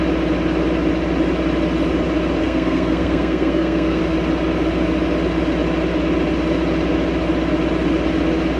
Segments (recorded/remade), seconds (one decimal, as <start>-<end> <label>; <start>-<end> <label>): 0.0-2.4 recorded; 2.4-4.0 remade; 4.0-8.6 recorded